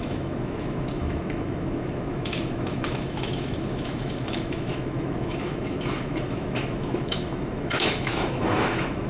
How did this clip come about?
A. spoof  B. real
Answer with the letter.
A